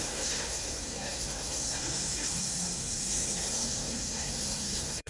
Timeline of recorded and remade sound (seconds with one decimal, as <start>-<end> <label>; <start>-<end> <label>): 0.0-5.1 remade